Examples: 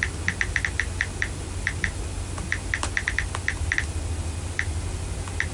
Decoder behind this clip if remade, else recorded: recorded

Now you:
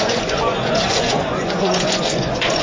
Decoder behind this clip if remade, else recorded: remade, vocoder, Vocos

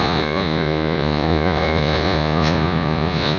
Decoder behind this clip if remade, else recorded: remade, vocoder, Vocos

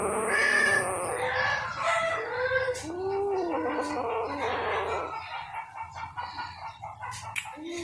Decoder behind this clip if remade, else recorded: recorded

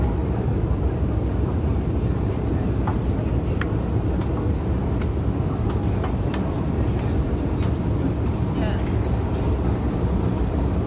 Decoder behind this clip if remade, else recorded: recorded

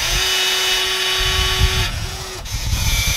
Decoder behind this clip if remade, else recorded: remade, vocoder, Vocos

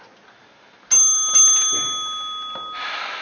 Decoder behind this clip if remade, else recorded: recorded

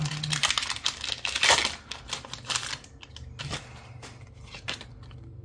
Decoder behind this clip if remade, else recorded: recorded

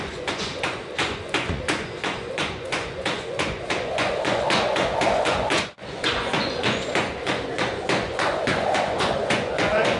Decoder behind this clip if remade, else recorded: remade, vocoder, Vocos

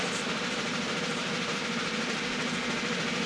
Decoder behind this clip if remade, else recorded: recorded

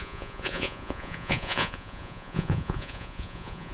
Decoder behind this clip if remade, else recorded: remade, vocoder, Vocos